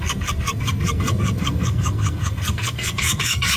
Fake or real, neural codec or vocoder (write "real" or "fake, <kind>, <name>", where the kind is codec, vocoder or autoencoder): fake, codec, SNAC